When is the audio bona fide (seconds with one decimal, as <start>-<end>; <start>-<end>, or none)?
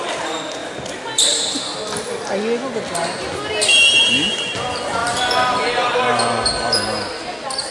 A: 0.0-7.7